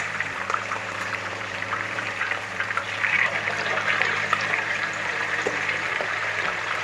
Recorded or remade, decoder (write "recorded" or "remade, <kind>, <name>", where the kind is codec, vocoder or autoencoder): remade, vocoder, BigVGAN v2